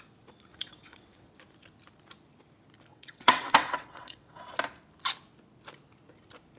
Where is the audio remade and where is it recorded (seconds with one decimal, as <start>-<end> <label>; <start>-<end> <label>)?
0.0-0.5 recorded; 0.5-1.3 remade; 1.3-2.9 recorded; 2.9-4.4 remade; 4.4-6.6 recorded